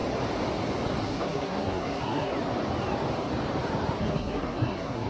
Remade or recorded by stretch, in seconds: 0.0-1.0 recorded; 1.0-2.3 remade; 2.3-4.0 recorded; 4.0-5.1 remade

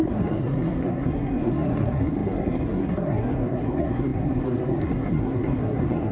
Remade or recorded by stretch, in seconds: 0.0-6.1 remade